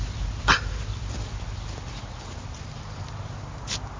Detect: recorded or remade recorded